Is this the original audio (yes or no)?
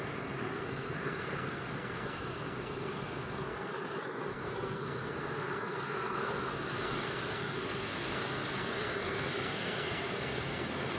no